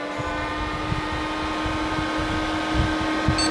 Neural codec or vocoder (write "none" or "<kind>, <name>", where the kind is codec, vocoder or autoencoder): none